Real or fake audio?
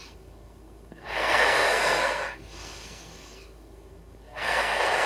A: fake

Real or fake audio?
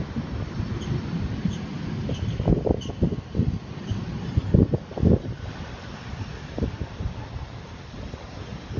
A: real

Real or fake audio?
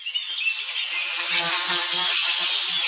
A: real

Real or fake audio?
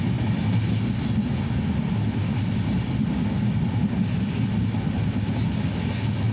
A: real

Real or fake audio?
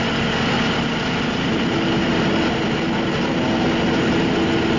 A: real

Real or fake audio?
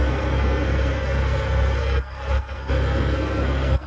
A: fake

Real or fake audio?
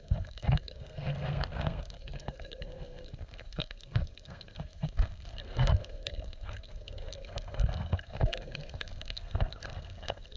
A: fake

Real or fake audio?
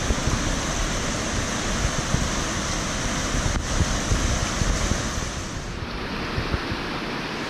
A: real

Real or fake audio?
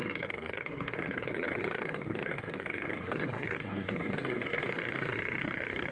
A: fake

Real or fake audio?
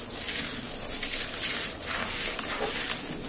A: real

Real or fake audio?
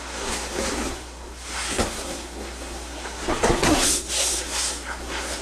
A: fake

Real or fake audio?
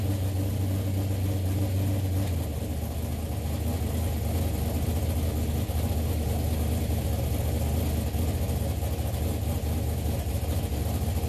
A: real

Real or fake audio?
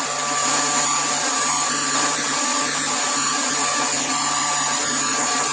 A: real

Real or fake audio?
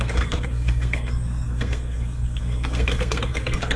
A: fake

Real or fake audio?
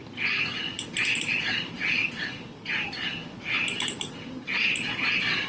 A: real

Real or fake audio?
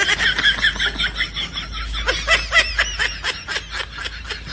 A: real